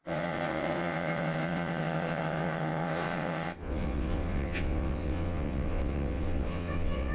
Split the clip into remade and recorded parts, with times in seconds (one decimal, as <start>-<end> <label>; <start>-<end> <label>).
0.0-7.1 remade